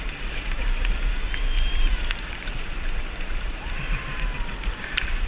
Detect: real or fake fake